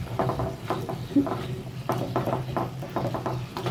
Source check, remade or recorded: recorded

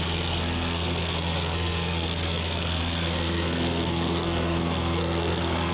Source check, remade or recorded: remade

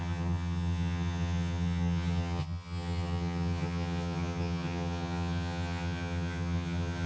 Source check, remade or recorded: remade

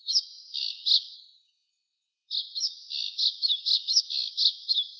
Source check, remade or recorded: remade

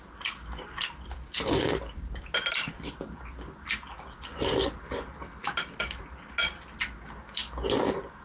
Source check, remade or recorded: recorded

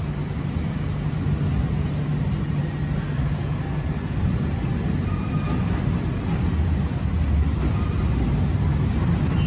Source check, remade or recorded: recorded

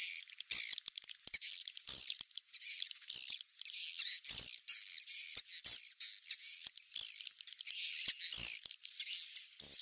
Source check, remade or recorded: recorded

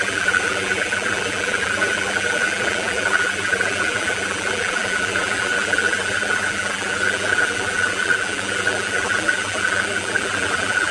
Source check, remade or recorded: remade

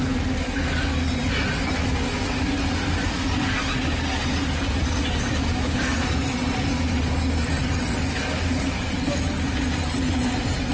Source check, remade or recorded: recorded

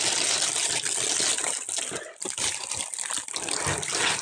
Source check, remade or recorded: recorded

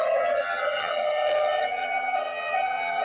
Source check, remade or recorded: remade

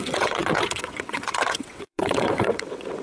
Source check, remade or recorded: remade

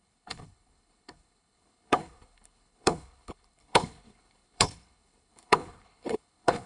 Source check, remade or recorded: remade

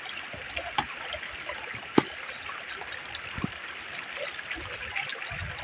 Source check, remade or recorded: recorded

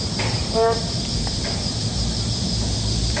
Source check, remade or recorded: remade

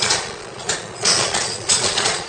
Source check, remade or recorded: remade